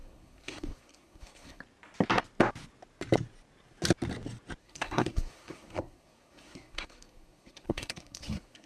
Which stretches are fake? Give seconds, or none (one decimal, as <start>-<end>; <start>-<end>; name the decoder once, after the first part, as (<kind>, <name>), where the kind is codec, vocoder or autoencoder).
0.0-1.6 (codec, SNAC); 4.6-8.7